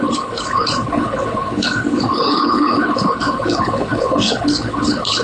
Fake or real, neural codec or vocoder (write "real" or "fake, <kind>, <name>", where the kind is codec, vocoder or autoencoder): fake, codec, HILCodec